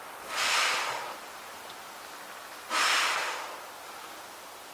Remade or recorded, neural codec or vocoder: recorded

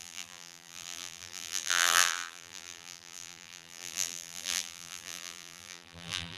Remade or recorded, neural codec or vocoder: remade, vocoder, BigVGAN v2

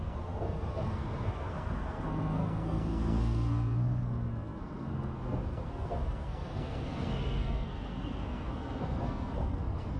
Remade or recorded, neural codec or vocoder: remade, codec, SNAC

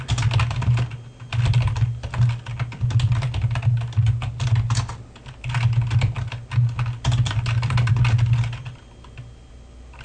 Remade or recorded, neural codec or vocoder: recorded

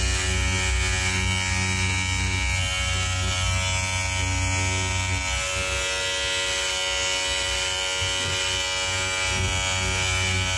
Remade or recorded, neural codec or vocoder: recorded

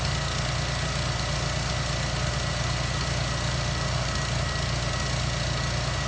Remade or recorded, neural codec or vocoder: recorded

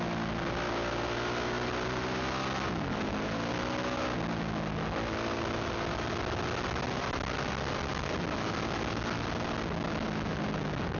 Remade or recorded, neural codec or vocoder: recorded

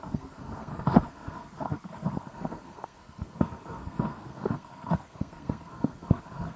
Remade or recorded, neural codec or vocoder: remade, codec, SNAC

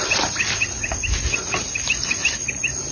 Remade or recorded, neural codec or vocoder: recorded